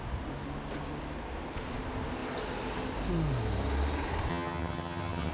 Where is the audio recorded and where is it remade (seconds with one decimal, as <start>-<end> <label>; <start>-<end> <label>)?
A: 0.0-4.3 recorded; 4.3-5.3 remade